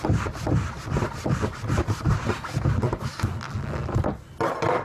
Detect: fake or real real